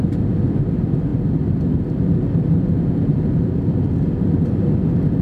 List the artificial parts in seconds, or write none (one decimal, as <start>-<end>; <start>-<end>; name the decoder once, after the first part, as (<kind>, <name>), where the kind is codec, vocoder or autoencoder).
none